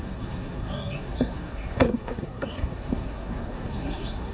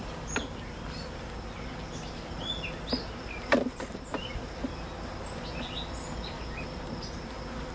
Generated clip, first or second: first